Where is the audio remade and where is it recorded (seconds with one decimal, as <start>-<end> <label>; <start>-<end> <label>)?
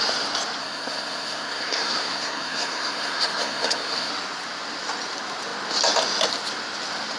0.0-0.6 recorded; 0.6-4.1 remade; 4.1-7.2 recorded